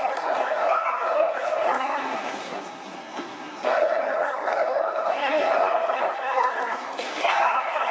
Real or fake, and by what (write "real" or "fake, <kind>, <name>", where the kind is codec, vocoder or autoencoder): fake, codec, SNAC